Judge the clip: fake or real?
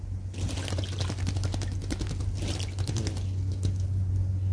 real